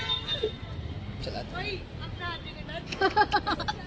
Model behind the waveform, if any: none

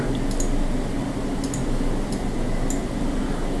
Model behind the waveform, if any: none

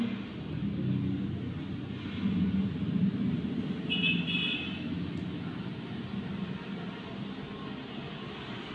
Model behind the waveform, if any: none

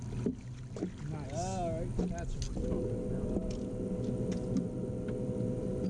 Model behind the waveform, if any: none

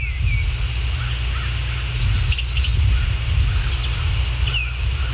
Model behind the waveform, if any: none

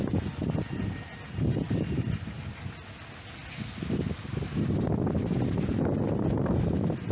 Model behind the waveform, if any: none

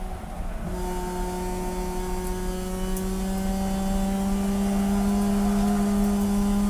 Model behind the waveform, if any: none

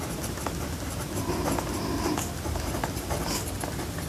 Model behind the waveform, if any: none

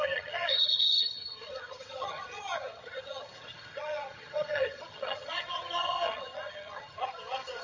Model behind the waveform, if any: vocoder, HiFi-GAN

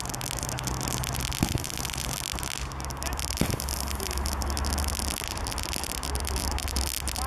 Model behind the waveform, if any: none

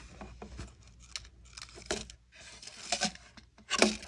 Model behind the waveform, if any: none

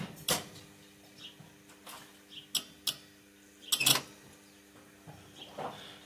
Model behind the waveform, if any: none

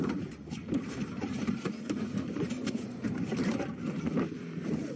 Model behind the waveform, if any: vocoder, BigVGAN v2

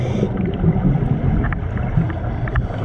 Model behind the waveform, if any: none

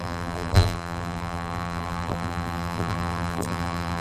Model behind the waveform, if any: vocoder, BigVGAN v2